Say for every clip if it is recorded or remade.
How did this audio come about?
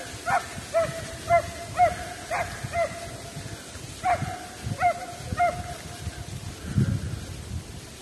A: recorded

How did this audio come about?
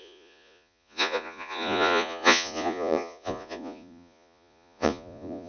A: remade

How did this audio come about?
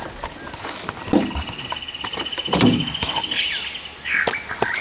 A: recorded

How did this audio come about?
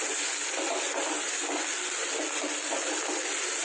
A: recorded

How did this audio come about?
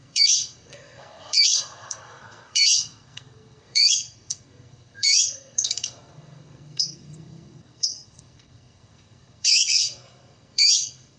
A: remade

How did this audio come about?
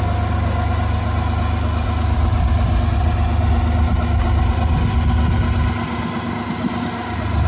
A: recorded